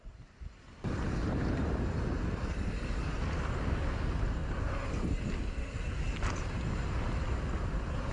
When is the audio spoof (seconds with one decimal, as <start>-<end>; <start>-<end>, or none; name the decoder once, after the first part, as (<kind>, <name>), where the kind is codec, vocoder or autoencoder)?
none